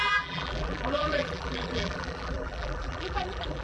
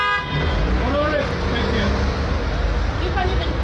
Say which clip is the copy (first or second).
first